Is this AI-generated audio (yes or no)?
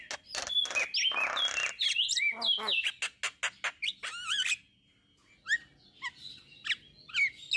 no